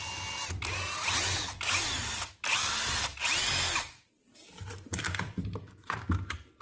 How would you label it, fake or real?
real